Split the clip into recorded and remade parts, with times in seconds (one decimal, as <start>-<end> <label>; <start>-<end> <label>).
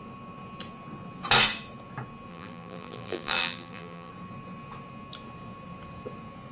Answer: 0.0-2.3 recorded; 2.3-4.1 remade; 4.1-6.5 recorded